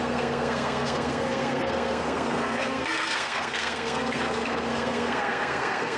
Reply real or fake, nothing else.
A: fake